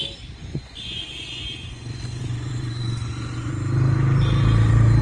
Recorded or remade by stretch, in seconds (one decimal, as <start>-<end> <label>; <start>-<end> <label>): 0.0-0.5 recorded; 0.5-3.5 remade; 3.5-5.0 recorded